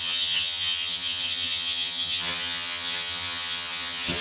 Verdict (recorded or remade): remade